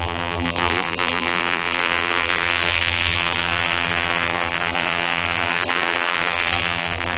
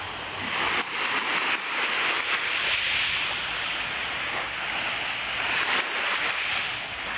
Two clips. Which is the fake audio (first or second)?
first